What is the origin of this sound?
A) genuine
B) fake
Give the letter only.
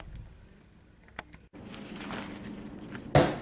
A